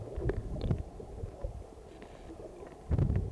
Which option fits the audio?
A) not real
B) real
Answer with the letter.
B